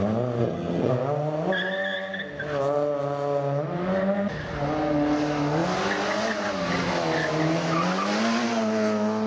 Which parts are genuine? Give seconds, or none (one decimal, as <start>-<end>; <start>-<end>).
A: 0.0-0.4; 0.9-9.3